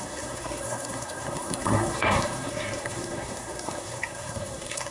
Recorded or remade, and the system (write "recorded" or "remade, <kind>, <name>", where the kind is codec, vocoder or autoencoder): remade, codec, SNAC